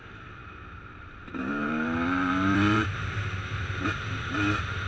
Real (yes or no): no